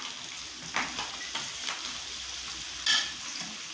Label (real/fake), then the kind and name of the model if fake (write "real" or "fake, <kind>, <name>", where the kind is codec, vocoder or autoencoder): real